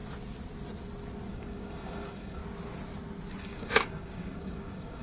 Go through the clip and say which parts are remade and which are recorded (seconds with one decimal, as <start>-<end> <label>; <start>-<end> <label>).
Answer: 0.0-1.3 recorded; 1.3-2.4 remade; 2.4-3.4 recorded; 3.4-5.0 remade